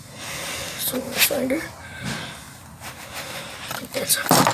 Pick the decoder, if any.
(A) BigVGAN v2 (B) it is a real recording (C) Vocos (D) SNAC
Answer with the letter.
B